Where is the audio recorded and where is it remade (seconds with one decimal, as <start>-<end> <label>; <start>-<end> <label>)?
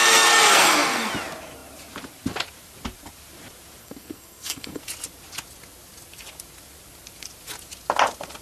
0.0-1.1 remade; 1.1-3.8 recorded; 3.8-4.8 remade; 4.8-8.4 recorded